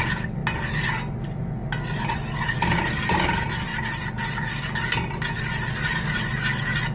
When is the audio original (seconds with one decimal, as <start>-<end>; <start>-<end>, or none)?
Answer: 0.4-1.1; 1.6-3.0; 3.7-5.3